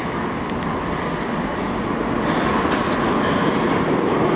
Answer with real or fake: real